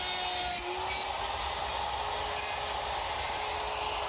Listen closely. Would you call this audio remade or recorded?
recorded